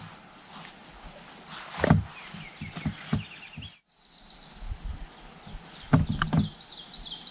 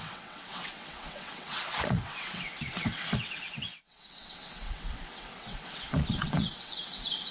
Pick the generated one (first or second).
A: second